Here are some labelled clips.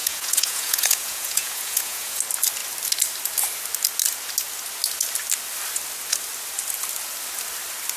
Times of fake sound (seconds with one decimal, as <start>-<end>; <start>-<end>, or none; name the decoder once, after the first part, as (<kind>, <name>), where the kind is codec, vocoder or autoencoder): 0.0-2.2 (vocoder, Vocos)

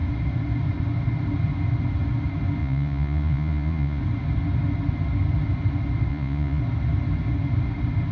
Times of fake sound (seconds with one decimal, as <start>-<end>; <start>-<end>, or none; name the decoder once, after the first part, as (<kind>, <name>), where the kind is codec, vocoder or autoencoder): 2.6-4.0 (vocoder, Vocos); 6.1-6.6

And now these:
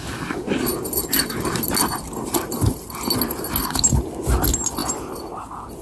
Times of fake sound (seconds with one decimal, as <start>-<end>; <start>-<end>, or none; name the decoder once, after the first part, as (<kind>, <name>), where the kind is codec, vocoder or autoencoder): none

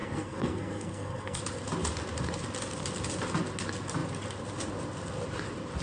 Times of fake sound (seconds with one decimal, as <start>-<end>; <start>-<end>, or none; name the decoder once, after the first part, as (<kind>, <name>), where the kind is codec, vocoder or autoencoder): 0.0-1.4 (codec, SNAC)

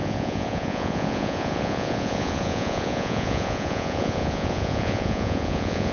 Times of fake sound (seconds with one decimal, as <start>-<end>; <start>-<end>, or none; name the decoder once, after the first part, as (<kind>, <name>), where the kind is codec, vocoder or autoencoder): 0.0-5.9 (vocoder, Vocos)

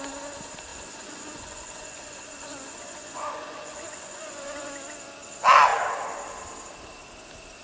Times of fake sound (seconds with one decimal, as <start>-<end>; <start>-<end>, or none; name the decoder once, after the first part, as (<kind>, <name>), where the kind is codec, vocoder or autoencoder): 0.7-4.7 (vocoder, Vocos)